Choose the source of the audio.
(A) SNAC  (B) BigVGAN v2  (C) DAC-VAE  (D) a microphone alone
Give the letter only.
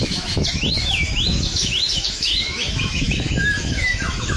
C